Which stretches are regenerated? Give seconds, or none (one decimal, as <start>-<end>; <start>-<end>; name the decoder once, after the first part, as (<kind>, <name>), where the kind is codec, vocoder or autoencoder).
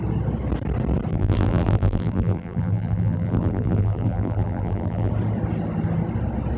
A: 1.1-5.1 (vocoder, BigVGAN v2)